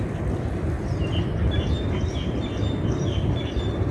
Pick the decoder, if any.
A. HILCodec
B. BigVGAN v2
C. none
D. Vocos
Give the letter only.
C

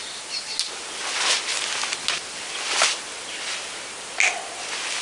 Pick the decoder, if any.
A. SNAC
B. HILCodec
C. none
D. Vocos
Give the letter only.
C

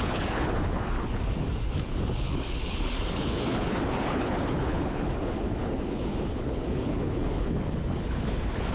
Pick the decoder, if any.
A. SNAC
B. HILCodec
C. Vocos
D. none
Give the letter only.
B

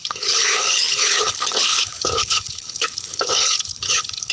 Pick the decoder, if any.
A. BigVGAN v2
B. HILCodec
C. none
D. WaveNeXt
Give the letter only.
B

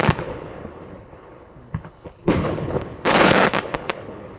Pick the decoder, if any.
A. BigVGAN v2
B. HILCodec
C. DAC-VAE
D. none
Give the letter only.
B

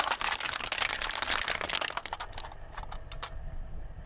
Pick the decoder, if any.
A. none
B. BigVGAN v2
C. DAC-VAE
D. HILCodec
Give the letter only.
A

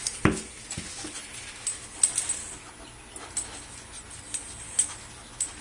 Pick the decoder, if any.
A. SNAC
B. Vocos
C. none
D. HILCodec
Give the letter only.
C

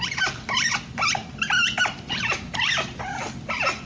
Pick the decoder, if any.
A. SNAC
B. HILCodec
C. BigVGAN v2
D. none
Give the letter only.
D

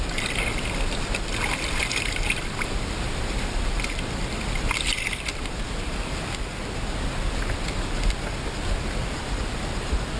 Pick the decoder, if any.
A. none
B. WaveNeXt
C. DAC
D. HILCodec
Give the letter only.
A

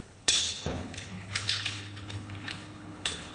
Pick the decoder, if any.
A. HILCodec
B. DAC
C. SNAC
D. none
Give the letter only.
A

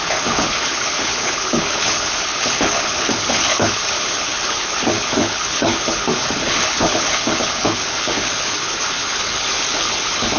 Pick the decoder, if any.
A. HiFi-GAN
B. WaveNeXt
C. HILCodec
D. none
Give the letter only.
C